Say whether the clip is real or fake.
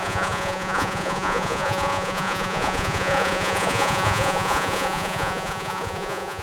fake